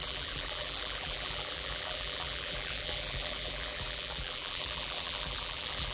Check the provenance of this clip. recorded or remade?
remade